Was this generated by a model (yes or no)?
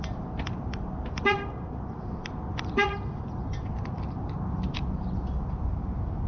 no